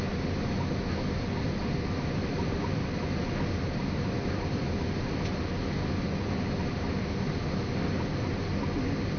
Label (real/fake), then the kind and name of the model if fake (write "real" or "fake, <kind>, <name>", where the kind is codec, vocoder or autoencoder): real